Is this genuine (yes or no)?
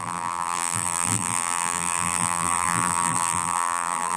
no